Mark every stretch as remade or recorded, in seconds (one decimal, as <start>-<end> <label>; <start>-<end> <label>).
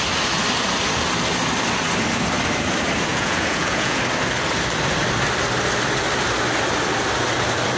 0.0-3.1 recorded; 3.1-4.0 remade; 4.0-7.8 recorded